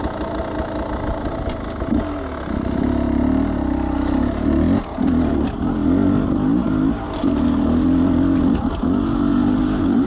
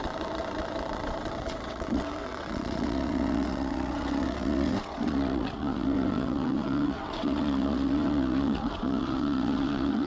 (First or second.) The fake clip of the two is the second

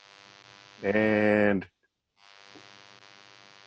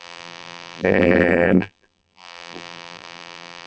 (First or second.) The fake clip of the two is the second